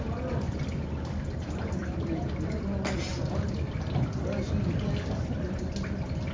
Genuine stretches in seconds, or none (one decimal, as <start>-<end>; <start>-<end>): 0.0-1.8; 2.6-3.1; 5.6-6.3